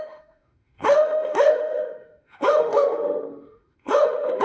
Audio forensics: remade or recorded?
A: remade